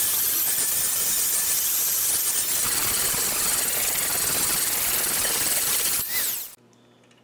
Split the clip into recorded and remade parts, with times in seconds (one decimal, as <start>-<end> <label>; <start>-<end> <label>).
0.0-7.2 recorded